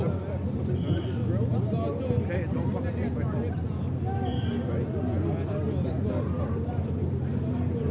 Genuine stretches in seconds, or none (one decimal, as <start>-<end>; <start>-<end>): 0.0-7.9